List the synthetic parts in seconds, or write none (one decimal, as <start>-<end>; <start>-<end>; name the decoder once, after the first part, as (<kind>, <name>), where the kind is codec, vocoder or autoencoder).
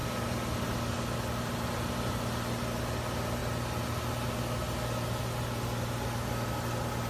none